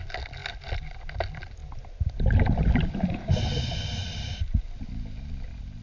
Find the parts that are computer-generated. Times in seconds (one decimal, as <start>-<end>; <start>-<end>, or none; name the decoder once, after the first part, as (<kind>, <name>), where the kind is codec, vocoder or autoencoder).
none